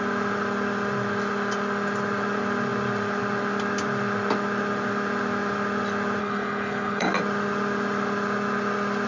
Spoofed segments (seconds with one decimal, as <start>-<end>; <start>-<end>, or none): 6.2-7.1